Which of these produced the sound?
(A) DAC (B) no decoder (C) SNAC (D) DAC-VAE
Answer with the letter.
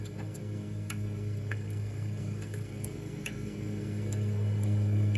C